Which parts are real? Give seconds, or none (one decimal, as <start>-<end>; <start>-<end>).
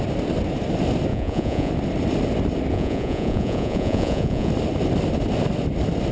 0.0-1.1; 1.7-2.7; 4.5-6.1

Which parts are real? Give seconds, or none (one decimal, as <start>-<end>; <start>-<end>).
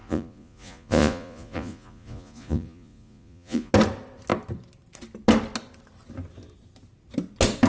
3.7-7.7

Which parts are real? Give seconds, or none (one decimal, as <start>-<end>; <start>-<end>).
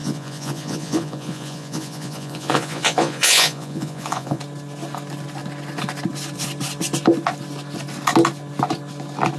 4.4-9.4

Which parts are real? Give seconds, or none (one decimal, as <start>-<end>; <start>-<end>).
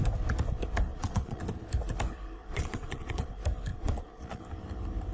0.0-0.9; 1.4-2.4; 3.3-3.7; 4.4-5.1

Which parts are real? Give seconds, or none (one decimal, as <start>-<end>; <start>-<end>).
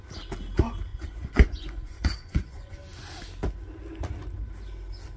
0.0-0.9; 2.7-5.2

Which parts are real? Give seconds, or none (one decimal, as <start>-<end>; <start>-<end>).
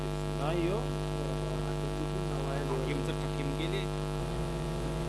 0.0-4.2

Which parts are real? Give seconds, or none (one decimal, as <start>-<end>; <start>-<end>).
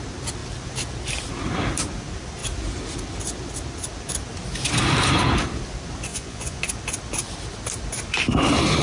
0.0-6.1; 6.6-8.8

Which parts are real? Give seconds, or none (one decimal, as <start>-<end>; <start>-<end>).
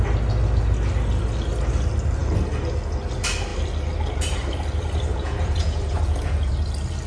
0.0-5.1; 6.5-7.1